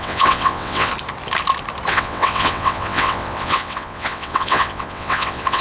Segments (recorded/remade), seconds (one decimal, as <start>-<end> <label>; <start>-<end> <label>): 0.0-0.9 remade; 0.9-1.9 recorded; 1.9-5.6 remade